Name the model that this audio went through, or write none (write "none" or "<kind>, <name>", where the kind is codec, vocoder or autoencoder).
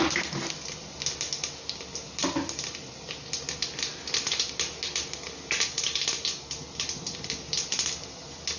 none